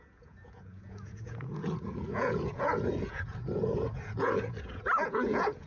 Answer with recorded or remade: remade